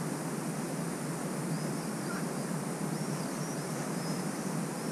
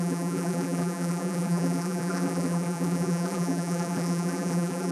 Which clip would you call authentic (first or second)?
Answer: first